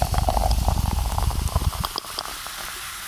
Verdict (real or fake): real